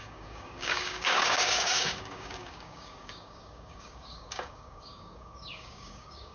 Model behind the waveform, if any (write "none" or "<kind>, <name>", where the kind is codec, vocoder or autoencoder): codec, DAC